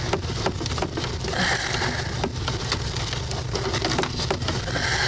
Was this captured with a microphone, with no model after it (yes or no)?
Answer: yes